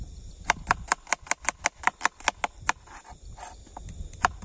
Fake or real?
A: real